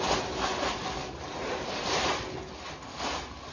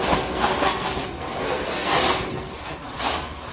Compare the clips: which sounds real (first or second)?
first